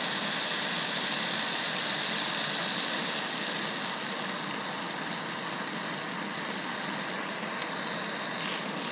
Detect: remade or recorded remade